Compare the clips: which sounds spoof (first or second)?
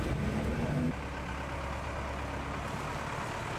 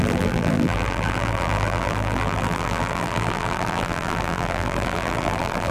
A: second